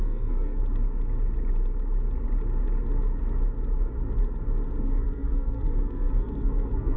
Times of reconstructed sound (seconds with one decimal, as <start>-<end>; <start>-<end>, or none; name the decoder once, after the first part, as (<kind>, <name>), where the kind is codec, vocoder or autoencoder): 0.0-0.6 (codec, SNAC); 4.8-7.0